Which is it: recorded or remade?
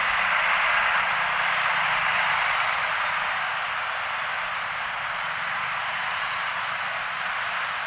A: recorded